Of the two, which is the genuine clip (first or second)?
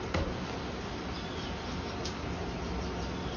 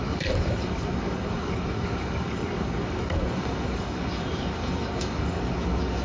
first